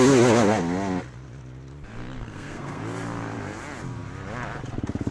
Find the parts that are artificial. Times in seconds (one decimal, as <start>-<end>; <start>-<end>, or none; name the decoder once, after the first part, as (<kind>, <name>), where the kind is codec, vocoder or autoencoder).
2.2-2.8 (codec, SNAC)